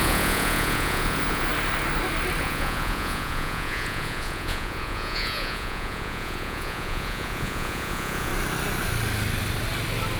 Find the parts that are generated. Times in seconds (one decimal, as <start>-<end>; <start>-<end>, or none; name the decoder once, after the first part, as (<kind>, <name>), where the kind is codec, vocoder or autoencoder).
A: 0.0-1.5 (vocoder, Vocos); 2.4-8.3